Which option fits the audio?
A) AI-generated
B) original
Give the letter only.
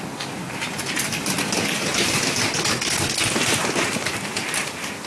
B